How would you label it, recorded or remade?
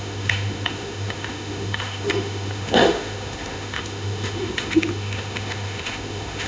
remade